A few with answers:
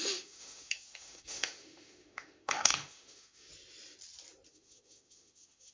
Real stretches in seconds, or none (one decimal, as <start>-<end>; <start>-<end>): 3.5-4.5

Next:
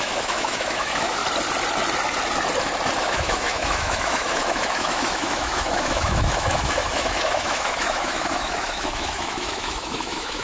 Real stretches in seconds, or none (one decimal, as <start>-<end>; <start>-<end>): 1.2-3.0

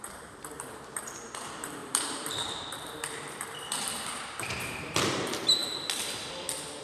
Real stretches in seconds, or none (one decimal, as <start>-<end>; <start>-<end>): 5.6-6.8

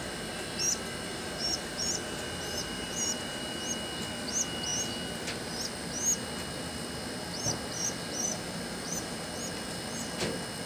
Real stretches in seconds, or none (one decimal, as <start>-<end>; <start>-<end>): 0.0-1.1; 3.6-8.3; 9.3-10.7

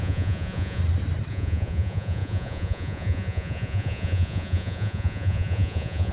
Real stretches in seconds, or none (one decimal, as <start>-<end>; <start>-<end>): 0.8-1.3

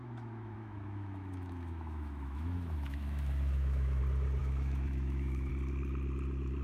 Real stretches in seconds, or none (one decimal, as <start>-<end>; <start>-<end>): 4.0-4.4; 5.5-6.6

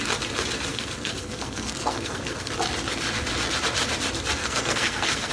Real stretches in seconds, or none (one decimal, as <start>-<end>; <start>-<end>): 0.0-0.7; 2.5-4.4